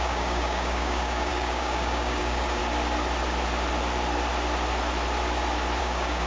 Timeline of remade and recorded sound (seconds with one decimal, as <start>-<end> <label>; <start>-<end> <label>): 0.0-2.6 remade; 2.6-5.8 recorded; 5.8-6.3 remade

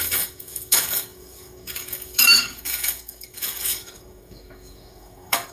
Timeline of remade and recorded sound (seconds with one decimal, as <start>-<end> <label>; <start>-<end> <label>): 0.0-5.5 remade

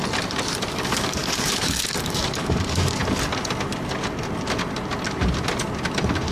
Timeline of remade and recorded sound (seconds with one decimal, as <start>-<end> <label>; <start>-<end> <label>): 0.0-0.7 recorded; 0.7-3.0 remade; 3.0-6.3 recorded